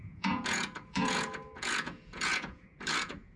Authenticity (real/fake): fake